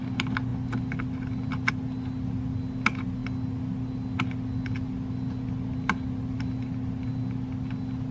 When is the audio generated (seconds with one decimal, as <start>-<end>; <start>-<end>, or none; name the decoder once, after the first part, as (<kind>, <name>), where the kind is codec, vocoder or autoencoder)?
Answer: none